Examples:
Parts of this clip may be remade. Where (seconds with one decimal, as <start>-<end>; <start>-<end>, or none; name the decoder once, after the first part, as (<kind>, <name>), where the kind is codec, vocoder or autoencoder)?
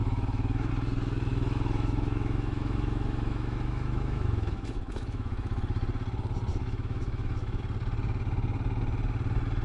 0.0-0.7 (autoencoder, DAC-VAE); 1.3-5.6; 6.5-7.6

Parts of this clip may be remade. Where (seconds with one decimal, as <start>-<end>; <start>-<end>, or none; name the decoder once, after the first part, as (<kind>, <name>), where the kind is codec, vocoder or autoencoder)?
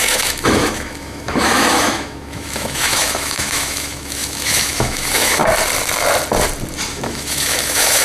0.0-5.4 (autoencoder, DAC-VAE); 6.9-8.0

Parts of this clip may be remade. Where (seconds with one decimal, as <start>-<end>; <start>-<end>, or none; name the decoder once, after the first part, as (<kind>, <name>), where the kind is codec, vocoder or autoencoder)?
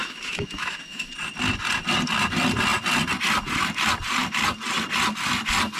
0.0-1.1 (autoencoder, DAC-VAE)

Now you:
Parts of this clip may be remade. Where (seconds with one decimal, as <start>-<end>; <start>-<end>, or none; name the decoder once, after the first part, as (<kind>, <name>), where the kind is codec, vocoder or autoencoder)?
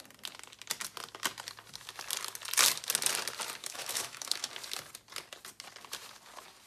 3.6-4.5 (autoencoder, DAC-VAE)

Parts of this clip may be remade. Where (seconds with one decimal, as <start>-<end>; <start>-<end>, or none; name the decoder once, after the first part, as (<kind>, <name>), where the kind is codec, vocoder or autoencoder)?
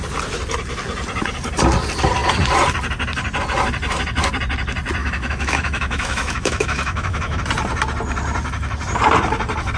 5.0-7.4 (autoencoder, DAC-VAE)